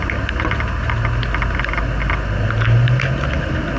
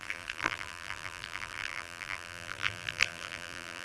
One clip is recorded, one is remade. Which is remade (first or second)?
second